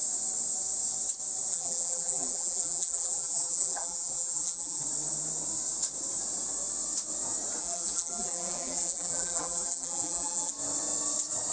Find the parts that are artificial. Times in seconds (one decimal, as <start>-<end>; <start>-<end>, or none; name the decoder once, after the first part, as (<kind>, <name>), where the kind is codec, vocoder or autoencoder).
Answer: 1.5-4.8 (vocoder, BigVGAN v2); 7.6-10.5